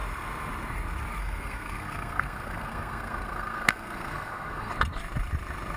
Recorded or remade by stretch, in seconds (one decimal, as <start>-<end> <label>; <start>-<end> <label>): 0.0-1.2 recorded; 1.2-4.7 remade; 4.7-5.8 recorded